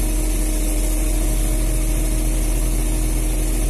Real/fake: real